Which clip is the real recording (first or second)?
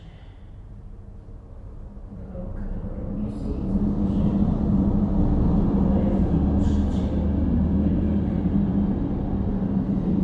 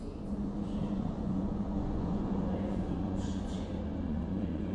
first